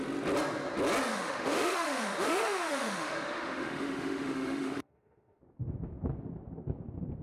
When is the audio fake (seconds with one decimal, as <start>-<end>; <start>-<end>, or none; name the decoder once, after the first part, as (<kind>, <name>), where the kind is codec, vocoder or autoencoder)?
1.1-5.4 (autoencoder, DAC-VAE)